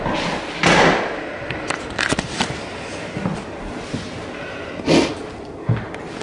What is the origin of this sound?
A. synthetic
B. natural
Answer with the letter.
B